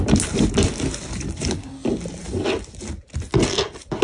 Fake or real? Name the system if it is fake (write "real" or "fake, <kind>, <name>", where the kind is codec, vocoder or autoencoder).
real